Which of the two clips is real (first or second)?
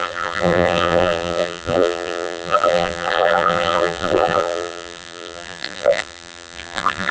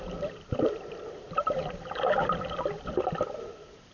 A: second